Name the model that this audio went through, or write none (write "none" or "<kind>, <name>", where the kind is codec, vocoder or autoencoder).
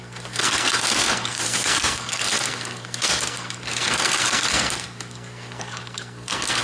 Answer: codec, SNAC